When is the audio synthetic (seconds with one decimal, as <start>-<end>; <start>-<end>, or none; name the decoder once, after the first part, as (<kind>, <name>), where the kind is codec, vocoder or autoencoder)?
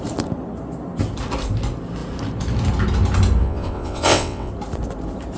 3.4-4.5 (vocoder, WaveNeXt)